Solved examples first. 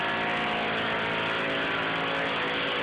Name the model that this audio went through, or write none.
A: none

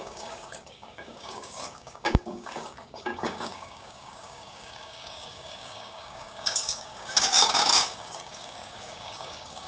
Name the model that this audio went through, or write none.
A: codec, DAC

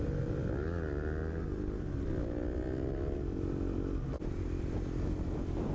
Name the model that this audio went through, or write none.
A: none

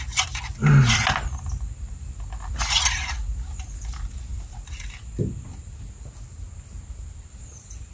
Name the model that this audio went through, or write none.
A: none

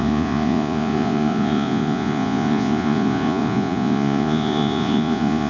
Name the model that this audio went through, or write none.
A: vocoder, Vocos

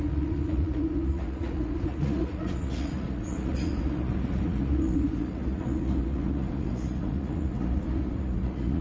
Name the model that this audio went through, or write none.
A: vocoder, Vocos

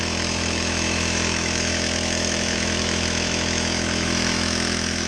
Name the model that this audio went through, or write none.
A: autoencoder, DAC-VAE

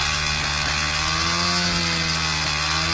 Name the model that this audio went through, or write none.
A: none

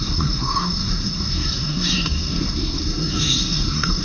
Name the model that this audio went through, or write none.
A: codec, SNAC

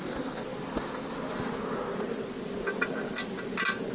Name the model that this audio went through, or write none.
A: none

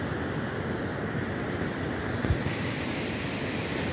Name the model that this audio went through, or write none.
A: none